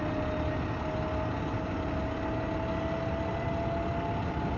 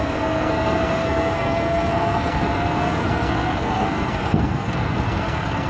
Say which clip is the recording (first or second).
first